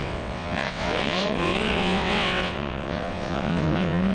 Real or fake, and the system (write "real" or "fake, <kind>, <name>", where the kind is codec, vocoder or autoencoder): fake, vocoder, WaveNeXt